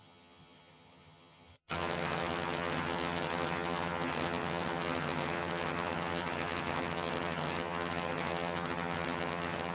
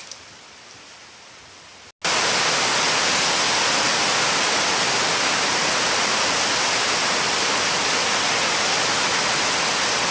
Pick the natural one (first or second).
second